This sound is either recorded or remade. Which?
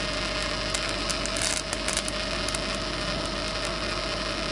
recorded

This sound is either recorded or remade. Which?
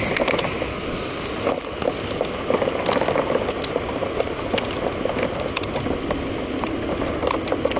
recorded